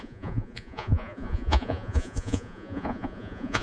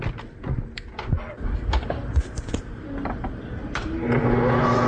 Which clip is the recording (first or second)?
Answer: second